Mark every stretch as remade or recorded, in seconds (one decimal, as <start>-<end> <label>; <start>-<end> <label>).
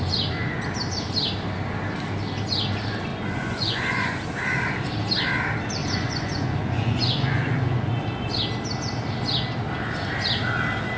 0.0-3.1 recorded; 3.1-4.2 remade; 4.2-5.8 recorded; 5.8-7.9 remade; 7.9-11.0 recorded